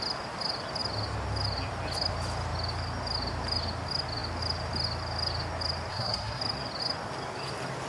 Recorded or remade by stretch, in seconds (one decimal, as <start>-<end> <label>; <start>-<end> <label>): 0.0-5.9 recorded; 5.9-6.4 remade; 6.4-7.9 recorded